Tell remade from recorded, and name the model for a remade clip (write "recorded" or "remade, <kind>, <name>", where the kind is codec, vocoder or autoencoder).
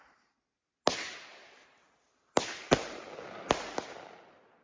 recorded